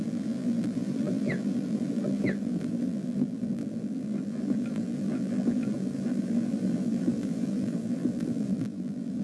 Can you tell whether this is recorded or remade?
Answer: remade